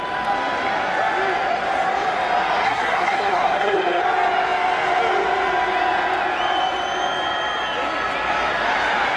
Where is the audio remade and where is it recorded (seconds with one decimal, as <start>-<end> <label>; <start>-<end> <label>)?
0.0-2.6 recorded; 2.6-4.0 remade; 4.0-9.2 recorded